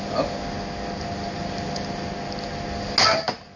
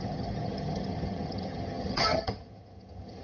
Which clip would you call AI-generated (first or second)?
second